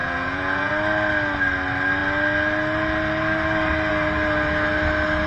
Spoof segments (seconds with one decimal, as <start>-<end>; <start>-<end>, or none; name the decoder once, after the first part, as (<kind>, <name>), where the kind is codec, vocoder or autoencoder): 0.0-0.7 (vocoder, Vocos)